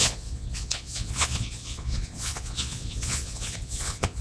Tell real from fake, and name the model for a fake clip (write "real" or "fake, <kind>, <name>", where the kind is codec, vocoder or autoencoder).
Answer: fake, vocoder, Vocos